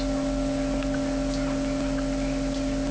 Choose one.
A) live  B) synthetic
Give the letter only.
A